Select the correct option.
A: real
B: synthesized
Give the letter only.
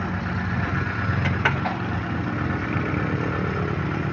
A